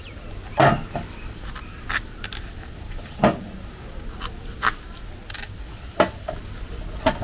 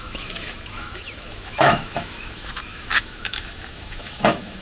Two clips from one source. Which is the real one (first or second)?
first